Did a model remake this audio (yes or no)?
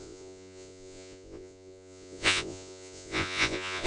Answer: yes